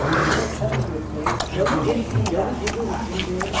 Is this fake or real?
real